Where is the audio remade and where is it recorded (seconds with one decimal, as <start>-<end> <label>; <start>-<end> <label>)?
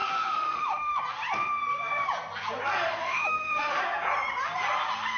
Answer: 0.0-1.0 remade; 1.0-3.0 recorded; 3.0-3.8 remade; 3.8-5.2 recorded